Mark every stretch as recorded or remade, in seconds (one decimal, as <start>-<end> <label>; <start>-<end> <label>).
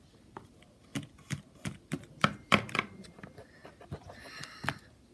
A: 0.0-5.1 recorded